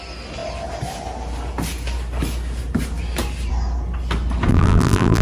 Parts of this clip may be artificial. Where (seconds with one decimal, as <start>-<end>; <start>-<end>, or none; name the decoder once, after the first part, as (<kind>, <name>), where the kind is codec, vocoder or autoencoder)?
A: 4.5-5.2 (vocoder, BigVGAN v2)